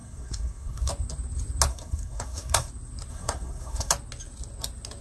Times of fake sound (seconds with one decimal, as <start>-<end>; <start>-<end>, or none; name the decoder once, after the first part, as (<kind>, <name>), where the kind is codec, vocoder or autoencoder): 0.0-0.9 (codec, SNAC); 1.7-2.7; 3.1-3.9